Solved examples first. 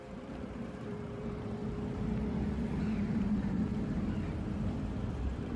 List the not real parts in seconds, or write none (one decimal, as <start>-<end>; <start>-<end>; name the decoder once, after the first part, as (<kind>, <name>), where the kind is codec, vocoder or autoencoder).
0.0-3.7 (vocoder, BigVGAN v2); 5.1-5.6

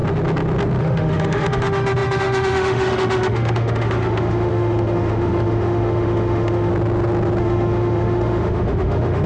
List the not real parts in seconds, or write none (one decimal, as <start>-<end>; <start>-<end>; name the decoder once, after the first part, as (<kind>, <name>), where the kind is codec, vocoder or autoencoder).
0.8-6.7 (autoencoder, DAC-VAE); 7.4-9.3

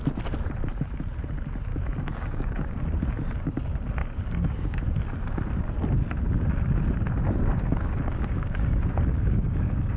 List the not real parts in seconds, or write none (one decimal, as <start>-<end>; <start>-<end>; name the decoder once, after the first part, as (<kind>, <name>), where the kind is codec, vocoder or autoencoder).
1.7-2.8 (codec, DAC); 4.0-4.8; 7.5-10.0